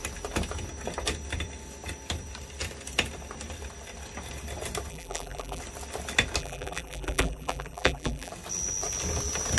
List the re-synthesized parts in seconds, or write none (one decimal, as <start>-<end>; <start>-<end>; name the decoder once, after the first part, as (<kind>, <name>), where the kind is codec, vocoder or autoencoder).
4.9-5.6 (vocoder, BigVGAN v2); 6.4-8.3